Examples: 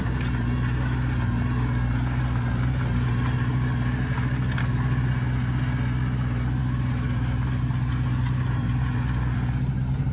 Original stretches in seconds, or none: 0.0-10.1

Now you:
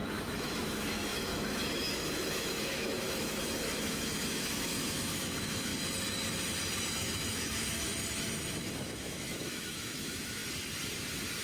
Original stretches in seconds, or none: 5.7-6.9; 7.9-8.5; 10.4-11.4

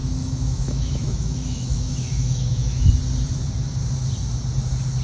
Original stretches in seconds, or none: 2.9-5.0